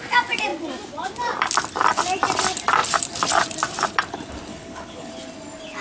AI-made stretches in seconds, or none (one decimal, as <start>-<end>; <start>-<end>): 4.5-5.1